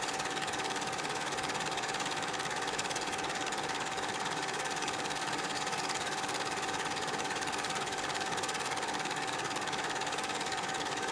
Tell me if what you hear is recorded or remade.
remade